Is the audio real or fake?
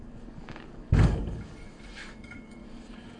fake